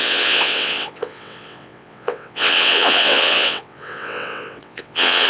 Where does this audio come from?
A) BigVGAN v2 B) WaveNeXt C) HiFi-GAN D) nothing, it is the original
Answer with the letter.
B